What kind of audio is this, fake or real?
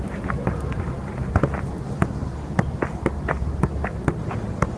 fake